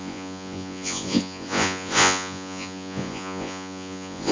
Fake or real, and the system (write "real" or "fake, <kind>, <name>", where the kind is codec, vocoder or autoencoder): fake, vocoder, Vocos